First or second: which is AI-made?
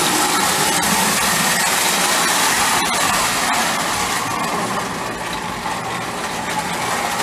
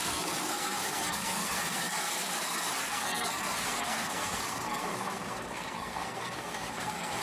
second